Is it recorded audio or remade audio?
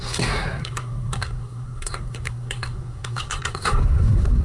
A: remade